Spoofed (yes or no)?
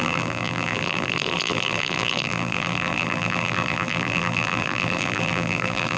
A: yes